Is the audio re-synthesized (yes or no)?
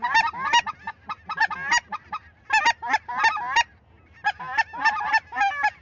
no